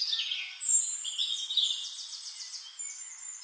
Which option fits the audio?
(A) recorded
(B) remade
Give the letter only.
A